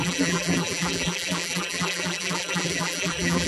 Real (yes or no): no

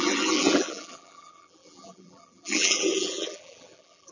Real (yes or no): no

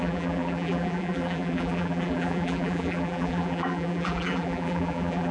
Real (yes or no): no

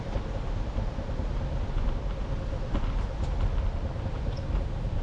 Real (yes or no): yes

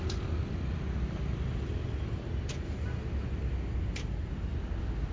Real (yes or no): yes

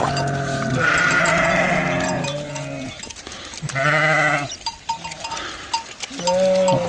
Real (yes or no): yes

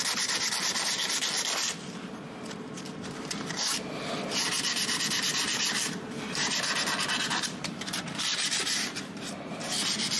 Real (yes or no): no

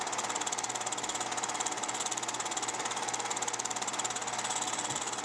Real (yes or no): yes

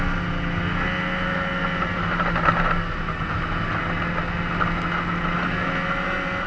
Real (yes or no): yes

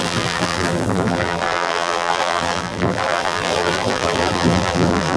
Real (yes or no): no